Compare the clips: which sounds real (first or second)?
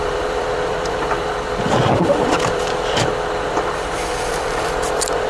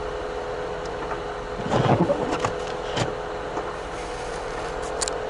second